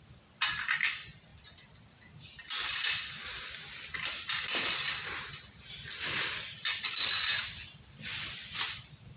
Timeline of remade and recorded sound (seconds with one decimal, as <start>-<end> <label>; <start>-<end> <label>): 0.0-9.2 recorded